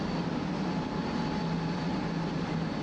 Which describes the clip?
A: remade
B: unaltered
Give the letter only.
B